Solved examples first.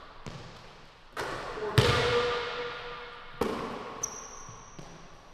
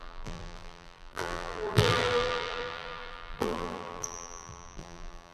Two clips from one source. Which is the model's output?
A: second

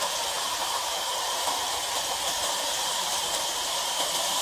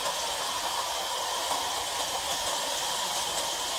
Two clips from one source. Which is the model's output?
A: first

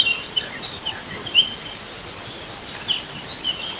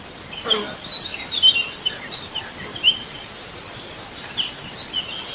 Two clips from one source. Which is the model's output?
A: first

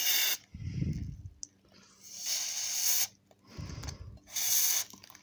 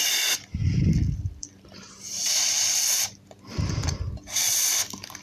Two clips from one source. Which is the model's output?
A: second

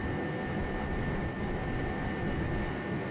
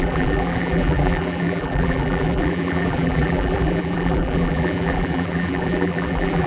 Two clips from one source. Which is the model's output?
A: second